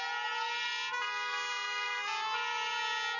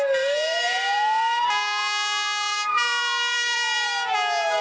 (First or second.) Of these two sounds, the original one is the first